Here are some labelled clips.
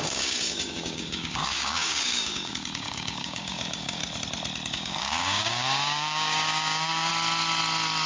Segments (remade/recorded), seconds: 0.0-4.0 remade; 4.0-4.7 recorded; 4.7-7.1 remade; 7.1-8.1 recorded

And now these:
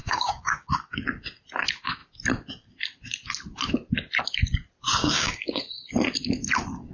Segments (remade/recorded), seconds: 0.0-0.7 remade; 0.7-5.0 recorded; 5.0-5.6 remade; 5.6-6.9 recorded

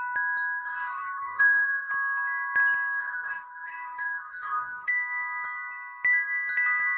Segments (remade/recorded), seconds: 0.0-0.6 recorded; 0.6-1.9 remade; 1.9-3.0 recorded; 3.0-4.9 remade; 4.9-7.0 recorded

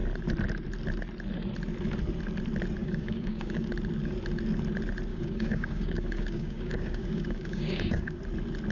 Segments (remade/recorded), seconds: 0.0-2.8 recorded; 2.8-3.7 remade; 3.7-5.1 recorded; 5.1-8.2 remade; 8.2-8.7 recorded

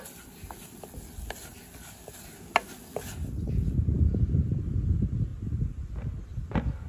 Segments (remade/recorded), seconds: 0.0-6.9 recorded